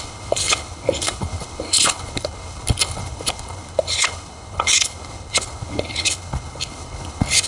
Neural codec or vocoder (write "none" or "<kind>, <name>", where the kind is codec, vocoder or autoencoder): codec, HILCodec